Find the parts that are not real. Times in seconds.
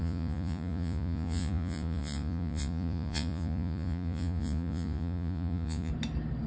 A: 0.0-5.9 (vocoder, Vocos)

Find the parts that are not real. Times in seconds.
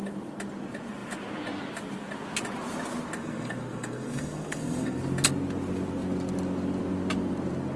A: 3.2-5.0 (codec, SNAC)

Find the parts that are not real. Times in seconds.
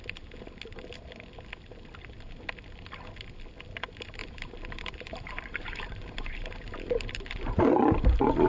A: 4.2-7.6 (vocoder, BigVGAN v2)